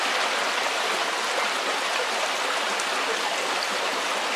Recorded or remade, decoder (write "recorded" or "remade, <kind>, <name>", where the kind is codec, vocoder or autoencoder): recorded